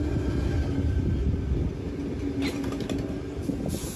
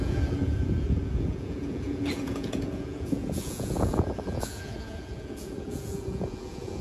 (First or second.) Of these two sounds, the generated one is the second